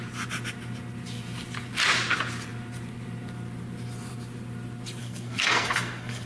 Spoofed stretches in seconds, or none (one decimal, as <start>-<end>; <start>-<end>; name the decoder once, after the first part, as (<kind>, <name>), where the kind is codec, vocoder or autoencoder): 5.0-6.3 (codec, SNAC)

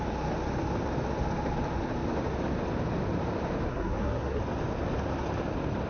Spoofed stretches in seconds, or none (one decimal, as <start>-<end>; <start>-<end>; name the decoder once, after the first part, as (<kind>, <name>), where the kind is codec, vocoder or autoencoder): 3.7-4.4 (codec, SNAC)

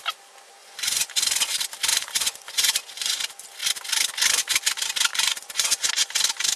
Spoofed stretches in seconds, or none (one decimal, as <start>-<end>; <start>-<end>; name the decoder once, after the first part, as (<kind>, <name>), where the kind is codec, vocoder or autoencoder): 0.6-1.1 (vocoder, Vocos); 1.9-3.2; 5.1-5.9

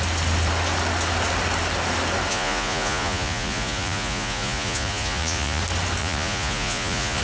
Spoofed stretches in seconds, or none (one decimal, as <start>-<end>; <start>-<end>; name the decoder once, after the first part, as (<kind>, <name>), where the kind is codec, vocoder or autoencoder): 2.3-5.6 (vocoder, Vocos); 6.0-7.2

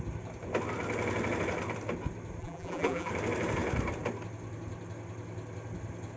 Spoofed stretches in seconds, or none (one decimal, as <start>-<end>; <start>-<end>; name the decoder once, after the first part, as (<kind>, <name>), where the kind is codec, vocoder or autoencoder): 2.4-3.1 (vocoder, BigVGAN v2)

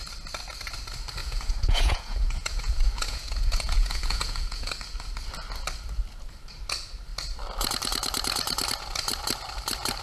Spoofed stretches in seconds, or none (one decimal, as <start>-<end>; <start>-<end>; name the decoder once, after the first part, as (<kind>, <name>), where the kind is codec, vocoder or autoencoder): 1.2-4.7 (vocoder, Vocos)

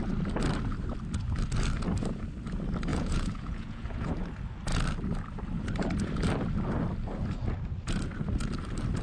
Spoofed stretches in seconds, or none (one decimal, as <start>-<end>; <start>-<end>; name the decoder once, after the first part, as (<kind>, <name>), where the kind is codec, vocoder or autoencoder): 2.9-4.1 (vocoder, Vocos)